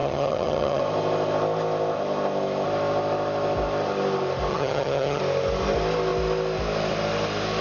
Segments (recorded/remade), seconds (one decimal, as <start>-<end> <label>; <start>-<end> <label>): 0.0-0.8 remade; 0.8-4.5 recorded; 4.5-5.2 remade; 5.2-7.6 recorded